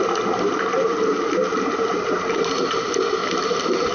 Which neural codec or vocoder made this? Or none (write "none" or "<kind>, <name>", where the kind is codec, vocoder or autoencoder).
none